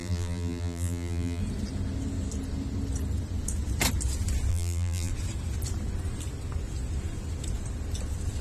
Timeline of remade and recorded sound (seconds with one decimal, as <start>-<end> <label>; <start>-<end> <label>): 0.0-1.4 remade; 1.4-4.5 recorded; 4.5-5.1 remade; 5.1-8.4 recorded